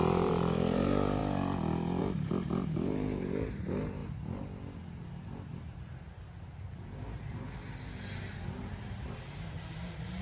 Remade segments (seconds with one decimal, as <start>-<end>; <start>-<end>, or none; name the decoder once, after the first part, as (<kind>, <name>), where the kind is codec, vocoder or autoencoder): 0.0-1.2 (vocoder, BigVGAN v2); 2.0-4.0; 9.0-10.2